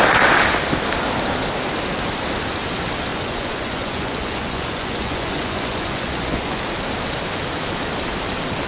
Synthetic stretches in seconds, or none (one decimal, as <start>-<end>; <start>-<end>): 3.1-6.6